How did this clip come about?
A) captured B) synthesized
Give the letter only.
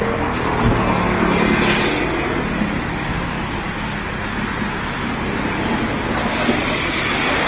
A